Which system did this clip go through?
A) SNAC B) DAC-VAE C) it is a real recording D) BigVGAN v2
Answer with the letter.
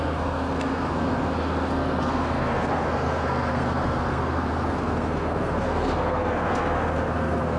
A